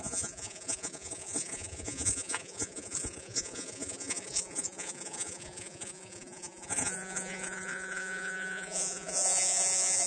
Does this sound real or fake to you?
fake